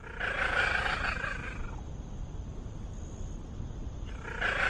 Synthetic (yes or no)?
no